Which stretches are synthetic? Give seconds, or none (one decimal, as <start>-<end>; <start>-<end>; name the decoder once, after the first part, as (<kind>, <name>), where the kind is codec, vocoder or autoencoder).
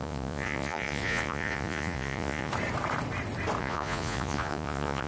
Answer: 0.0-2.5 (vocoder, Vocos); 3.6-5.1